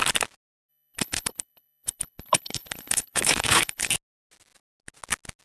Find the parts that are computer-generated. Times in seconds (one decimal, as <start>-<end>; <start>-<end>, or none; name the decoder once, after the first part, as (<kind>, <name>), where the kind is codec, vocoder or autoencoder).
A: 0.7-3.9 (codec, HILCodec)